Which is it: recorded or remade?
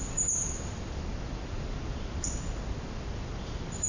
recorded